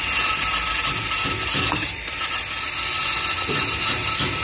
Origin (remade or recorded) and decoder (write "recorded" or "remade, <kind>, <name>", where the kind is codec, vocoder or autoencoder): recorded